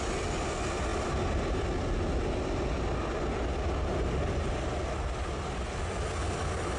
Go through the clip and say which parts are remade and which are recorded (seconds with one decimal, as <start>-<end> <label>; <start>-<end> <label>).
0.0-6.8 recorded